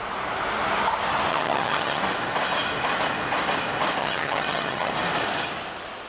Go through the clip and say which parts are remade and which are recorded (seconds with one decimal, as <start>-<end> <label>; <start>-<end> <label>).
0.0-1.3 recorded; 1.3-2.0 remade; 2.0-4.0 recorded; 4.0-4.9 remade; 4.9-6.1 recorded